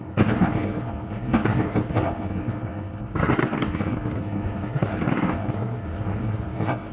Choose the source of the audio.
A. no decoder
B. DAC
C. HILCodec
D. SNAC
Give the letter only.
D